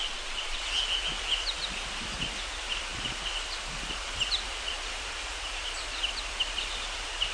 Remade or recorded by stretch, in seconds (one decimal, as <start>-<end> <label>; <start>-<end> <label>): 0.0-0.6 remade; 0.6-7.3 recorded